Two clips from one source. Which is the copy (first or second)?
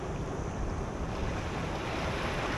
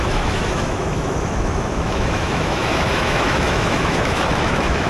second